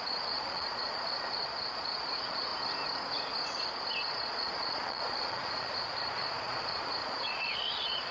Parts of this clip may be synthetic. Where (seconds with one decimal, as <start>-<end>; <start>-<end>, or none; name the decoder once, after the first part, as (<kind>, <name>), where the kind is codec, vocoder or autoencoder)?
0.0-2.5 (vocoder, Vocos); 4.0-8.1